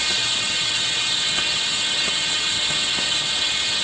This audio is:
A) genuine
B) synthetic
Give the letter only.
B